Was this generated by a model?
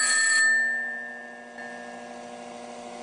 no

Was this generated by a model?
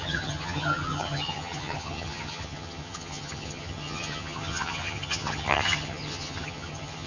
yes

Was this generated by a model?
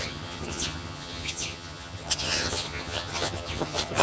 yes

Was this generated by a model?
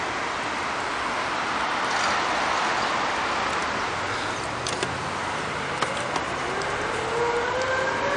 no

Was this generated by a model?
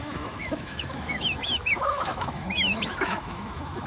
yes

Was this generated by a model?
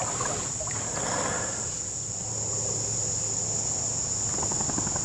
no